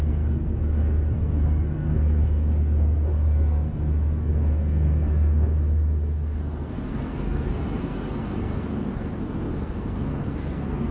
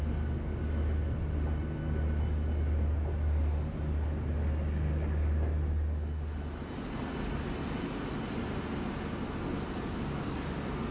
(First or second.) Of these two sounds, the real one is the second